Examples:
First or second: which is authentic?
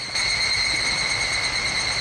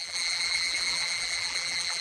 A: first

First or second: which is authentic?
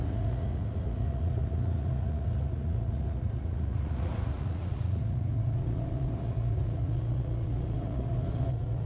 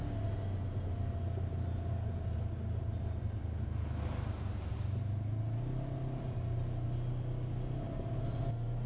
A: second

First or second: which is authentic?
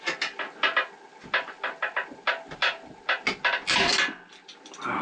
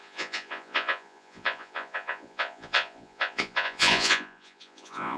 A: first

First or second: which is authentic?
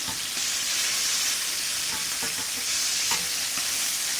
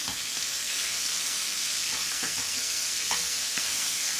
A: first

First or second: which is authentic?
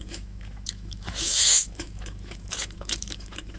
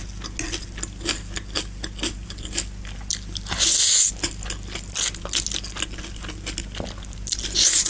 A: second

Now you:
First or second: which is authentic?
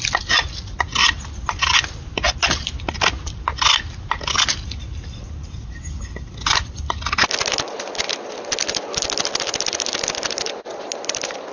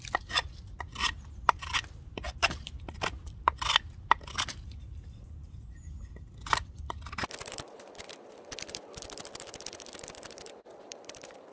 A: first